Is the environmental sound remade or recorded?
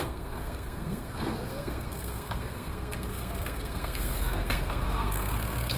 remade